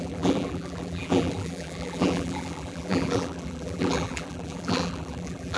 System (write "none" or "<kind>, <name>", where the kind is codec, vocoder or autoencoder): vocoder, BigVGAN v2